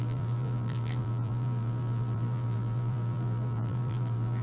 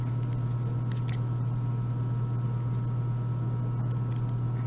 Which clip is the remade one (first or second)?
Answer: first